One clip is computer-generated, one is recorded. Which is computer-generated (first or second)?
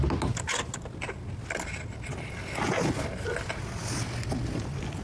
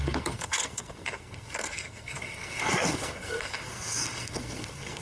second